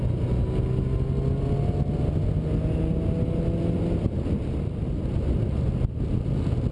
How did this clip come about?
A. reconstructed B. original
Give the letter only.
B